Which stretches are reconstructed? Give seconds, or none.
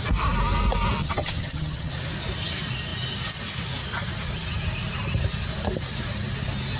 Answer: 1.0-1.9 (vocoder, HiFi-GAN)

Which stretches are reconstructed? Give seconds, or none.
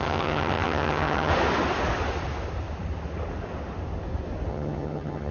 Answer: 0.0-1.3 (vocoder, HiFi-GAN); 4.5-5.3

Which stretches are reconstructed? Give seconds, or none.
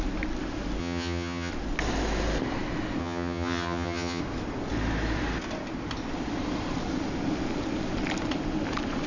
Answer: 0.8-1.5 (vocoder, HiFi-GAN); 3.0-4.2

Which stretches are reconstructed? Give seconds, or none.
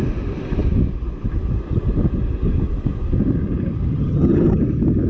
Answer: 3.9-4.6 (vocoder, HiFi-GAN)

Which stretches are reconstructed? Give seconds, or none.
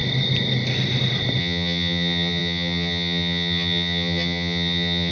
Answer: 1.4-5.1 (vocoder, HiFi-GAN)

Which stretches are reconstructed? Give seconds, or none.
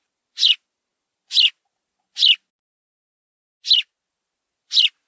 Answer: none